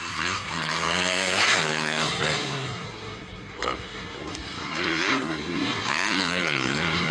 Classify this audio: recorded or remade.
remade